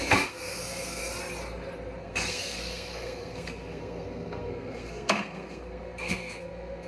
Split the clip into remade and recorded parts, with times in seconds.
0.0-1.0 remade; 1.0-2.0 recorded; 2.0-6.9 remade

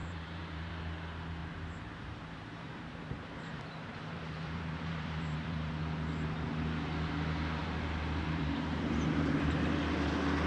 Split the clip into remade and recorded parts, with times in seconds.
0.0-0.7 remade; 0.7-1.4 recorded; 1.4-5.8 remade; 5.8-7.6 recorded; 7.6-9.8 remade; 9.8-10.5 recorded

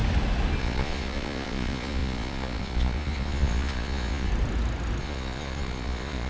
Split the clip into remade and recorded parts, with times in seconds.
0.0-0.6 recorded; 0.6-4.3 remade; 4.3-5.0 recorded; 5.0-6.3 remade

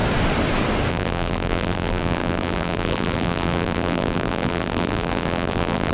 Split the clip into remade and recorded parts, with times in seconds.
0.0-0.9 recorded; 0.9-5.9 remade